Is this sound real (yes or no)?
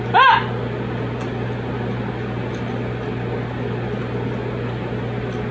yes